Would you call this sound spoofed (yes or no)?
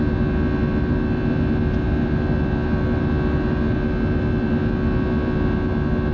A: no